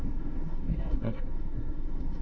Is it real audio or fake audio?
fake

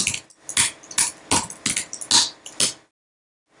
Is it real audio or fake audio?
real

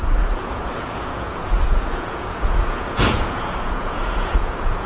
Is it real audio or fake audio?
fake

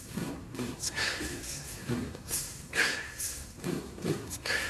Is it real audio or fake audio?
fake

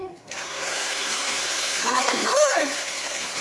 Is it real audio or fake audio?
fake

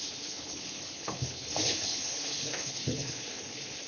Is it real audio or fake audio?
fake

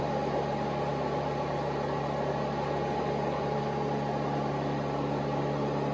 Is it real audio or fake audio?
real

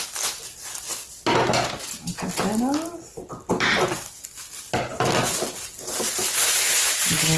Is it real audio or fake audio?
real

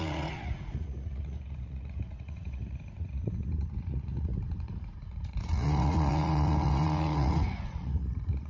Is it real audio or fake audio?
fake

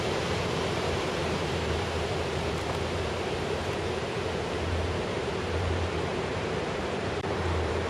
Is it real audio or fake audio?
fake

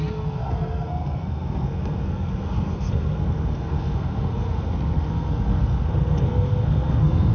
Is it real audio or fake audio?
fake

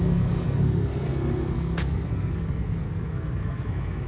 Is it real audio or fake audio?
fake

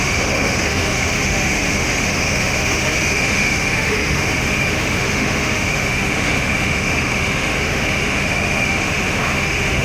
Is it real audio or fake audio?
fake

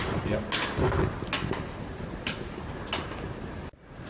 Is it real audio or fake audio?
real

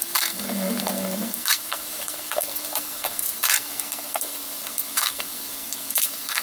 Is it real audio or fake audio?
fake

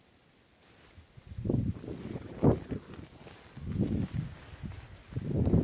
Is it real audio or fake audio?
real